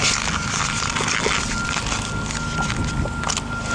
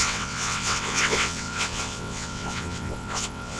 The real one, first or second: first